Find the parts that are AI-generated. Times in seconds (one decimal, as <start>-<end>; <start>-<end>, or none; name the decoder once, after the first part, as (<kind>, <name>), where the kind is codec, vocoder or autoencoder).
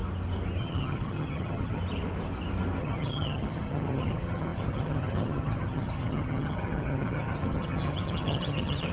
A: 0.6-1.8 (vocoder, HiFi-GAN); 2.8-8.9